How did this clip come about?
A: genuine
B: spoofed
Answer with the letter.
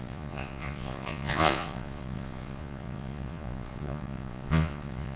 B